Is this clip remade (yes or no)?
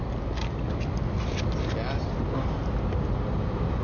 no